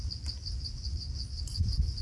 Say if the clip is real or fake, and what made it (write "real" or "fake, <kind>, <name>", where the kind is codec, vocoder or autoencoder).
fake, vocoder, BigVGAN v2